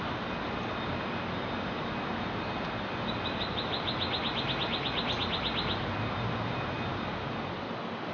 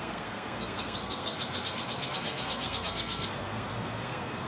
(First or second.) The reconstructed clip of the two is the second